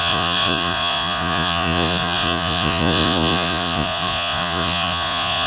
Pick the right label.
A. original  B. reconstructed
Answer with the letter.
B